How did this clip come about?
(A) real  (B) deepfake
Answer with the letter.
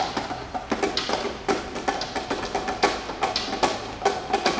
A